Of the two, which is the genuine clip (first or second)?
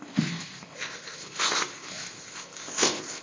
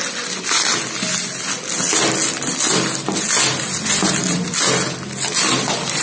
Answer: second